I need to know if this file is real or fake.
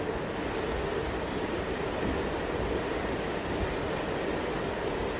real